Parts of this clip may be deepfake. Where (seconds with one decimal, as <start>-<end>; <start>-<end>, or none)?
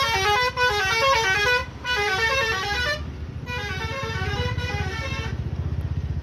1.6-4.7